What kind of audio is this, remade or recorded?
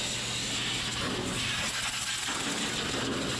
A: recorded